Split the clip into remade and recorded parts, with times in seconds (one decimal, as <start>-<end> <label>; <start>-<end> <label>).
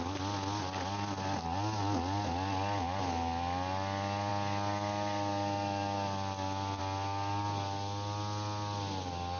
0.0-9.4 recorded